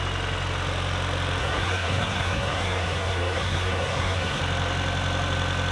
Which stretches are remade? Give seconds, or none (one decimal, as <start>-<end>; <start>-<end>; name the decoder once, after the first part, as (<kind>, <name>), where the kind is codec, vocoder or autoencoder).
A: 1.4-4.4 (codec, SNAC)